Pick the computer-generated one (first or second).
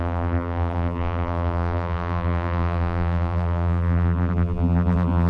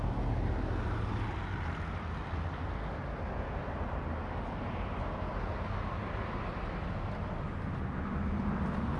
first